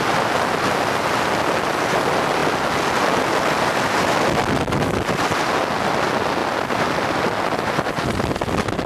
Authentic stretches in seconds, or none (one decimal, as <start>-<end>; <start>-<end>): 0.0-6.4; 7.1-8.9